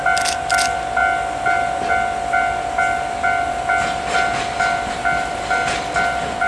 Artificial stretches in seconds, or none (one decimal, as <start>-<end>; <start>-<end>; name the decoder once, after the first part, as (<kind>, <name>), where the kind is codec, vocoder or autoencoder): none